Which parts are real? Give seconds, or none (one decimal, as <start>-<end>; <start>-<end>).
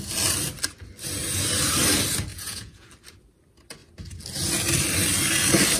0.0-2.3; 2.9-5.8